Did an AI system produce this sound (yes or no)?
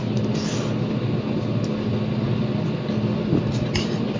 no